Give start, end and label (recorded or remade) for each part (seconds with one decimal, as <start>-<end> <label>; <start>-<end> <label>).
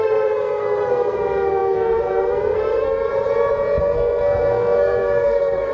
0.0-3.1 remade; 3.1-3.8 recorded; 3.8-5.7 remade